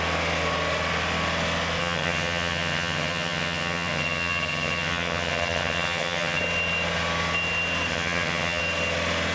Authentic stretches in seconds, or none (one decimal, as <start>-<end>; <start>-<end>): 0.0-1.8; 6.4-7.9; 8.6-9.3